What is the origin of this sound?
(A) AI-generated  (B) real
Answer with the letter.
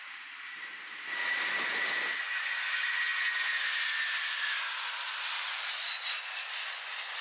B